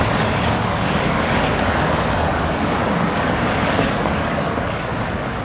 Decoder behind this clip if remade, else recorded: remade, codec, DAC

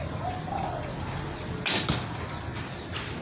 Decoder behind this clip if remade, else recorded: recorded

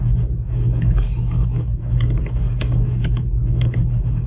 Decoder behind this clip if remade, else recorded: remade, codec, DAC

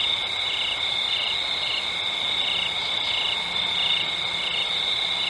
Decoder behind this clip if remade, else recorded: recorded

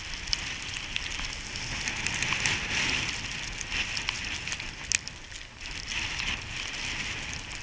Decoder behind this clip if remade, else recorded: recorded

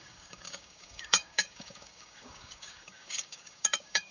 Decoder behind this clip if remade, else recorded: remade, codec, DAC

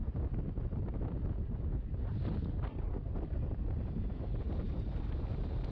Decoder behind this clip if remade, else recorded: recorded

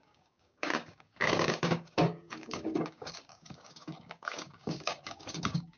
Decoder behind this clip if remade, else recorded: remade, codec, DAC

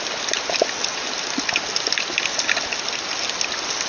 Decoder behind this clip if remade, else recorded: recorded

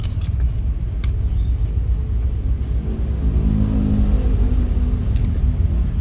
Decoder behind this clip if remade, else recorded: recorded